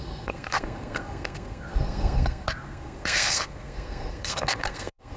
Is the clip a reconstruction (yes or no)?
yes